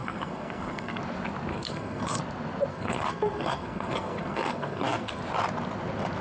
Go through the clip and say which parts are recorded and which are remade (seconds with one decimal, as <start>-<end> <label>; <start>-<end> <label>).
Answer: 0.0-1.0 remade; 1.0-1.5 recorded; 1.5-2.2 remade; 2.2-2.7 recorded; 2.7-5.2 remade; 5.2-6.2 recorded